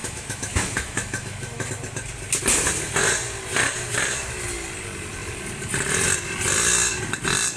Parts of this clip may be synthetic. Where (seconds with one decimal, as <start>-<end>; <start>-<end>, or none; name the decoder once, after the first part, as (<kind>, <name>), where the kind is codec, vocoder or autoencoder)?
0.0-1.7 (autoencoder, DAC-VAE)